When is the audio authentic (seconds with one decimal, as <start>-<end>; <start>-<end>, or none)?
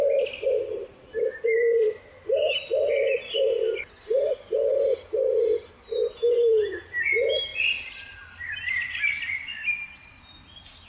0.0-7.5; 9.3-10.9